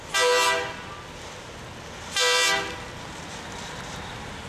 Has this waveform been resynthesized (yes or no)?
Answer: no